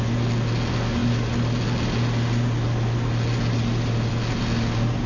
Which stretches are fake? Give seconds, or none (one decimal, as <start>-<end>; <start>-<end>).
none